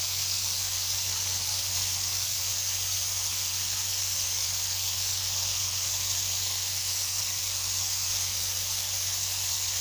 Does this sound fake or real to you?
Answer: fake